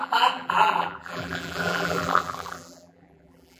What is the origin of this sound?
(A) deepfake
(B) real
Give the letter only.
A